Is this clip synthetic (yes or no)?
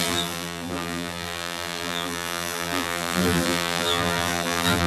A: yes